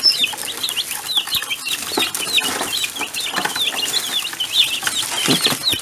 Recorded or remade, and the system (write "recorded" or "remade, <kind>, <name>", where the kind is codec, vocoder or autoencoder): recorded